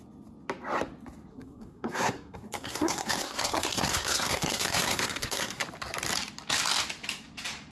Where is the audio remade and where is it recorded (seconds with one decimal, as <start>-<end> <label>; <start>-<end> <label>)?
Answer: 0.0-1.3 recorded; 1.3-5.6 remade; 5.6-7.7 recorded